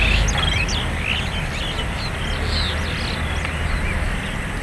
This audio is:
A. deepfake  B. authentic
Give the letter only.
B